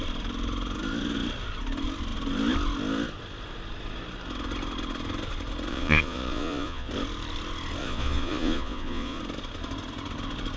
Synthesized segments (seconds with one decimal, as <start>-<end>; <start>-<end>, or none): 5.7-6.9; 7.8-9.2